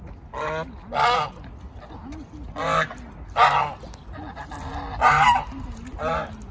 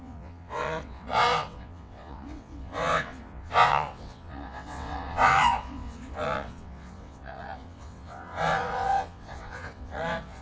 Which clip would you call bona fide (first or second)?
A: first